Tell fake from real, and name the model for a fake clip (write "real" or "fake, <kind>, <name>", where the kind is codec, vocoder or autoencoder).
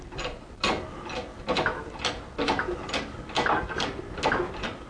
real